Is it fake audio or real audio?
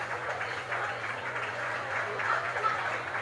fake